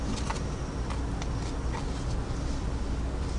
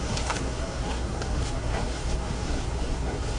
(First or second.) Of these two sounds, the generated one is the second